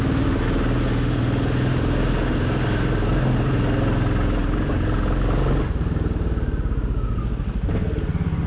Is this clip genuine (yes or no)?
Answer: yes